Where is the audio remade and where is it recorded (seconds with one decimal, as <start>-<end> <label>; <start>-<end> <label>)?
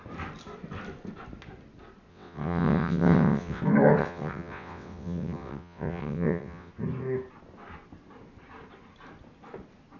0.0-2.1 recorded; 2.1-3.6 remade; 3.6-4.0 recorded; 4.0-6.7 remade; 6.7-10.0 recorded